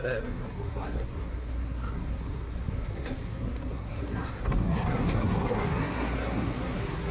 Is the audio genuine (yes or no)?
no